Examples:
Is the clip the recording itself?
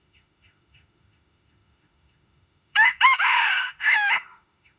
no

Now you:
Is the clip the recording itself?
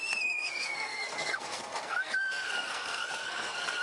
no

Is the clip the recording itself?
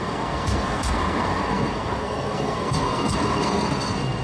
no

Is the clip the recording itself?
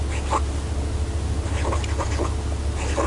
yes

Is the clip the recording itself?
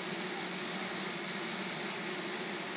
yes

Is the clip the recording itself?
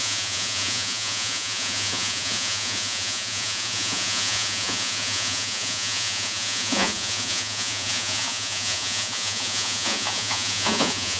no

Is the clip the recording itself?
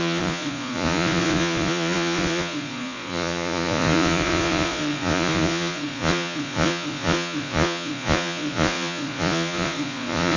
no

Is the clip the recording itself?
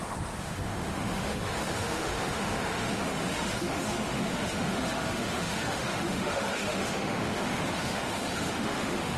no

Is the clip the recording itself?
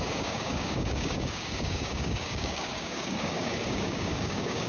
no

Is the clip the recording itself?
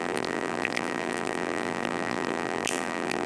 no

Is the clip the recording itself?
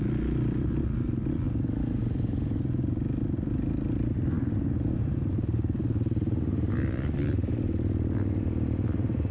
yes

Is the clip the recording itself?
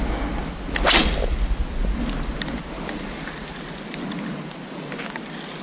yes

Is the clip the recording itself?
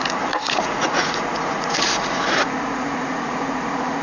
no